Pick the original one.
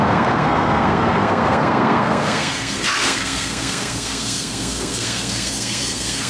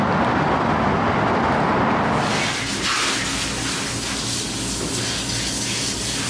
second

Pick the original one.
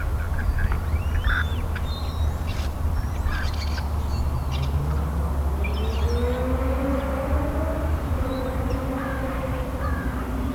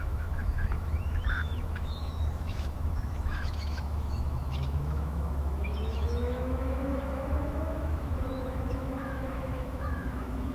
first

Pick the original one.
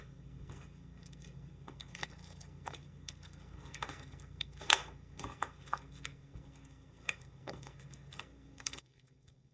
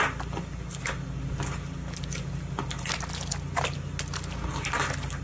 second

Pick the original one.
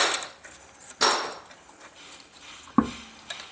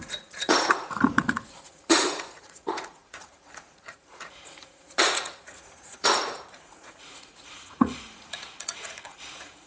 first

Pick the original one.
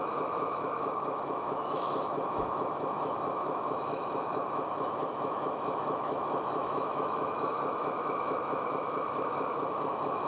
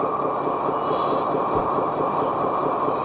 second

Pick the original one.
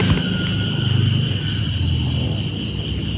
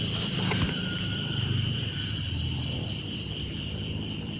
first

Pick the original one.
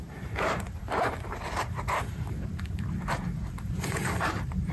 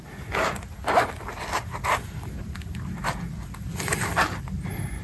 second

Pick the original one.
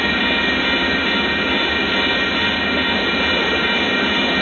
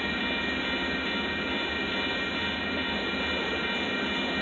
second